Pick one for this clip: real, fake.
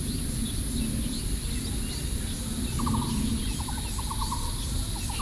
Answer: real